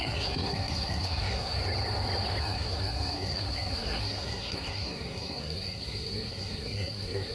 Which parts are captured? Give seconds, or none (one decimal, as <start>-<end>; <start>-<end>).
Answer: 1.6-2.4